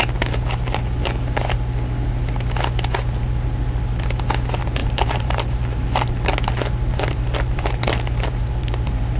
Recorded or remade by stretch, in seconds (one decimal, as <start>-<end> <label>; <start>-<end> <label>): 0.0-4.8 recorded; 4.8-6.3 remade; 6.3-6.8 recorded; 6.8-9.2 remade